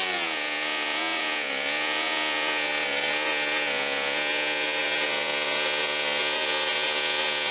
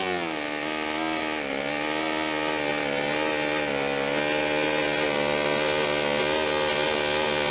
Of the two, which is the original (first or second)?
second